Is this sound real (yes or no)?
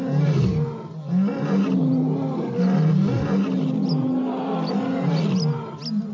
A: yes